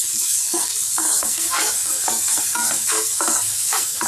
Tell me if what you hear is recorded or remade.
remade